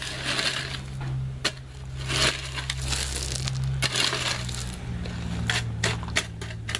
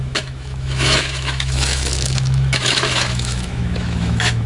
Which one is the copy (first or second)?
second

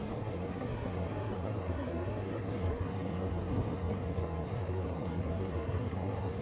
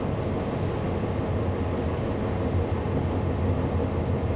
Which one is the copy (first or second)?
first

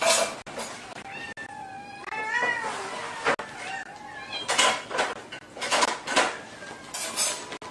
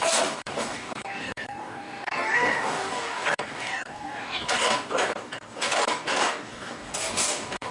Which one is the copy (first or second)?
second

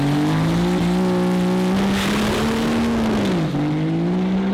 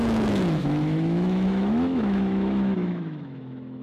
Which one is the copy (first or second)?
second